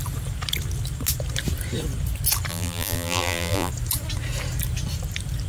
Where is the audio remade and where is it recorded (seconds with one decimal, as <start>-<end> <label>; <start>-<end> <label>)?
0.0-2.5 recorded; 2.5-3.7 remade; 3.7-5.5 recorded